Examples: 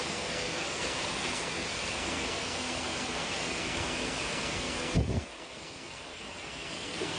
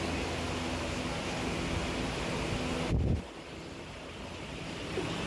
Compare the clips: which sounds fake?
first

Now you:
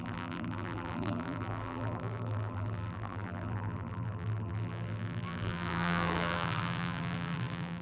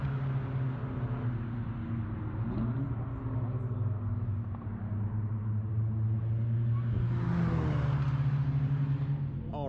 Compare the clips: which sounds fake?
first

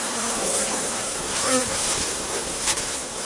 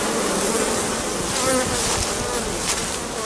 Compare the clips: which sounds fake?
first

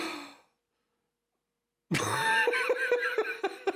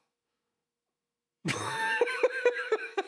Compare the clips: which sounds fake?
second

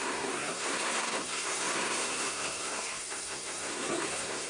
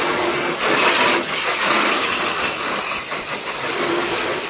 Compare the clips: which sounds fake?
first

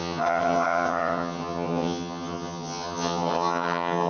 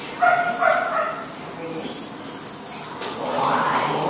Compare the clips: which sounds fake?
first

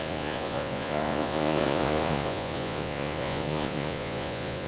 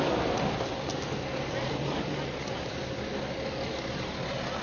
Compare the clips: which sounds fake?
first